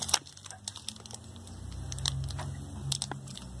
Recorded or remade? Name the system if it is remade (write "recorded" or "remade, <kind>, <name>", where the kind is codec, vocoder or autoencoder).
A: recorded